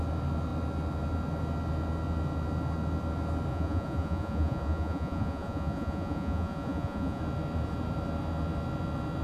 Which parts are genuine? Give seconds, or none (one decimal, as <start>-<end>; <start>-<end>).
0.0-3.5; 7.2-9.2